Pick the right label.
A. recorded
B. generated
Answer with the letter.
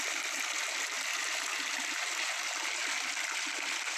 A